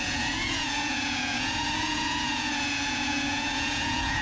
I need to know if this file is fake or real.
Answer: fake